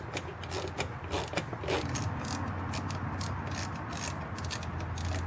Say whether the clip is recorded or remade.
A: recorded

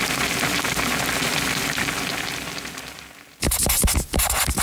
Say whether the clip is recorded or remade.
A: recorded